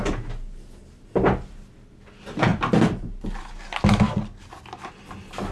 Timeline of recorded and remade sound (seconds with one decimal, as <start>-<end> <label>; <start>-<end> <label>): 0.0-5.5 recorded